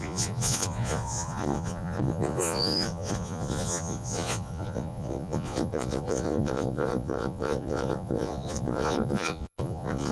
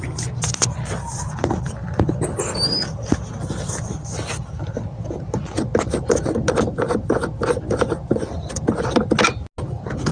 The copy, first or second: first